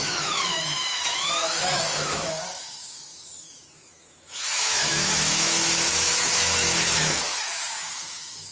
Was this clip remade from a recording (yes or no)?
yes